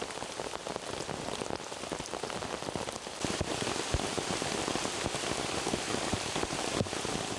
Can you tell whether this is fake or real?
real